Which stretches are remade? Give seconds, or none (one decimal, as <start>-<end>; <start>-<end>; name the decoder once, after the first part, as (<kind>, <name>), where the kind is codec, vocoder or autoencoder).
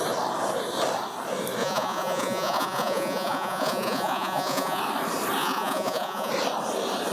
1.6-4.8 (vocoder, Vocos); 5.4-6.3